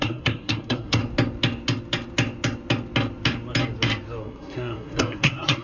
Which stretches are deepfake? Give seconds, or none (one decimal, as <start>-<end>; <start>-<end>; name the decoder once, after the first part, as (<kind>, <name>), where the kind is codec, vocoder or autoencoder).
0.0-1.0 (codec, SNAC); 4.2-5.6